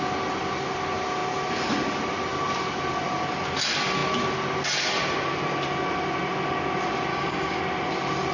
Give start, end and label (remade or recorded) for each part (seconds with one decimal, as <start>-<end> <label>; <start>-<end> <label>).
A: 0.0-7.1 recorded; 7.1-7.6 remade; 7.6-8.3 recorded